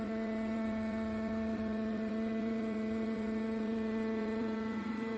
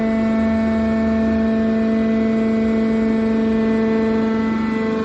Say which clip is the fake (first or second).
first